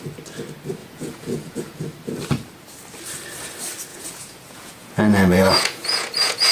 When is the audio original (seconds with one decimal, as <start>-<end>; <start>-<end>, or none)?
0.0-0.8; 1.8-3.9